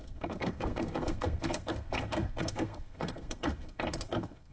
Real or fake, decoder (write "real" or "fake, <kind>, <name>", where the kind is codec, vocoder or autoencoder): fake, codec, SNAC